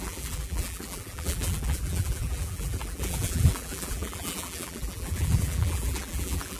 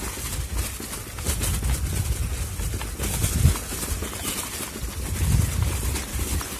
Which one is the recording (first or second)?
second